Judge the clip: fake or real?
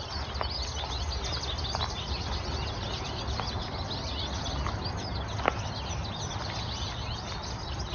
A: real